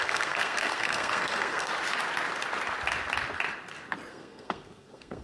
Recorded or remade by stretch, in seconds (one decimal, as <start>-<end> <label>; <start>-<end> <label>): 0.0-1.7 remade; 1.7-4.1 recorded; 4.1-5.2 remade